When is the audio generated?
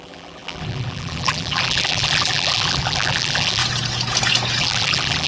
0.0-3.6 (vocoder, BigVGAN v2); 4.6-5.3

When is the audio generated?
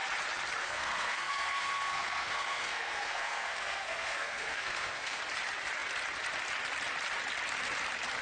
0.6-5.2 (codec, SNAC)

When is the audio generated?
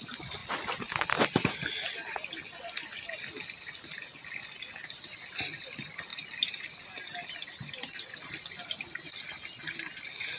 none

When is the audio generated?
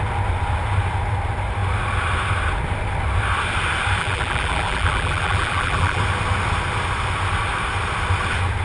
4.0-6.0 (vocoder, BigVGAN v2)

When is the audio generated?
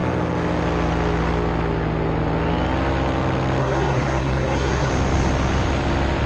3.6-4.9 (codec, SNAC)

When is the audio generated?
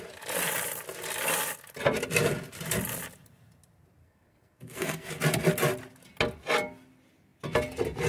4.0-5.1 (codec, SNAC)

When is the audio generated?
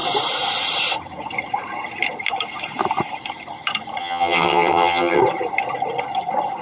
4.0-5.2 (vocoder, HiFi-GAN)